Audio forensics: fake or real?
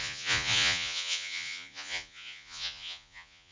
fake